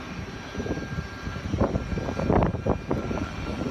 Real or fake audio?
real